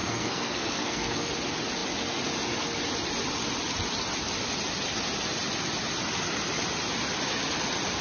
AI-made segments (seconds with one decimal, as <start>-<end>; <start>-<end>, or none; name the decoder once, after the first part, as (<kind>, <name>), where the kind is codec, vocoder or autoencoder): 0.0-1.3 (codec, SNAC)